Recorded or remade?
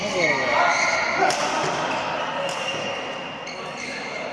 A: recorded